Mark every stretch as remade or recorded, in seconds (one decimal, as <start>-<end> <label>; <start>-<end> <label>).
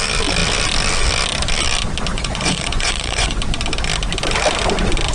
0.0-2.1 recorded; 2.1-3.4 remade; 3.4-5.1 recorded